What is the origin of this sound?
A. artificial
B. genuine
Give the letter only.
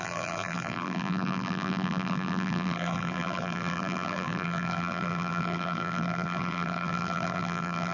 A